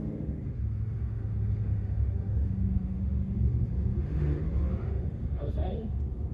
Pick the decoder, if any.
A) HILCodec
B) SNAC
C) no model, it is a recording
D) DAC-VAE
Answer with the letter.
D